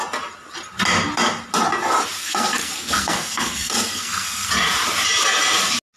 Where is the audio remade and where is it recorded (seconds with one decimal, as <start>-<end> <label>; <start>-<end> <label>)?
0.0-2.2 recorded; 2.2-4.5 remade; 4.5-6.0 recorded